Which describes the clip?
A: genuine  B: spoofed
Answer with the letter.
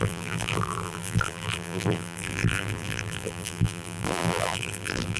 B